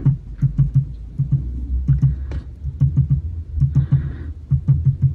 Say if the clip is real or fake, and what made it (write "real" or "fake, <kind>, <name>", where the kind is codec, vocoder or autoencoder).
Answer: real